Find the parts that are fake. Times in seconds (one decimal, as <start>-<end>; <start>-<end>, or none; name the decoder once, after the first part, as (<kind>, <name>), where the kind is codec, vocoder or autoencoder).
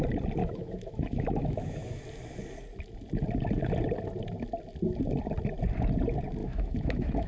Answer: 0.4-2.0 (autoencoder, DAC-VAE); 6.4-7.3